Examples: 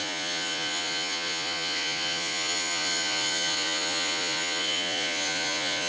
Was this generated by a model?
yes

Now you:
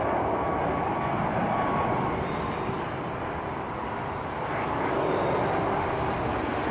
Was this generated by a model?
no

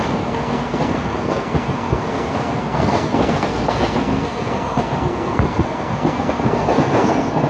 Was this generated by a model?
yes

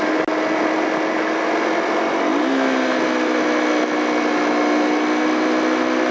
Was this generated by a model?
no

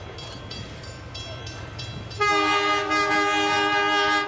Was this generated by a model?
no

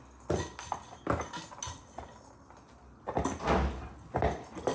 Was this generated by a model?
no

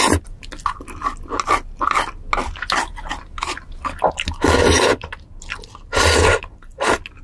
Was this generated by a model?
no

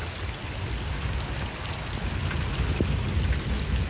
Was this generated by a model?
no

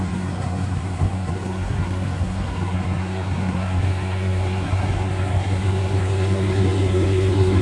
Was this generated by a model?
yes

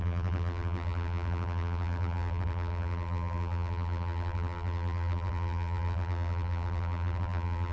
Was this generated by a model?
yes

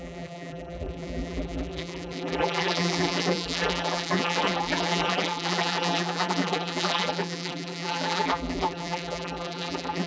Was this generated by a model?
yes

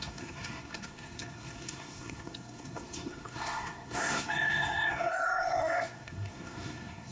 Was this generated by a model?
yes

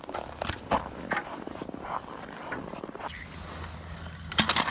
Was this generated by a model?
no